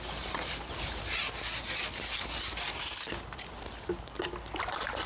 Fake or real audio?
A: real